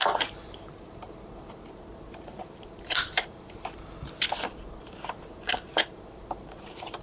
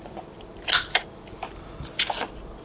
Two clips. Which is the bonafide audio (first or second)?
second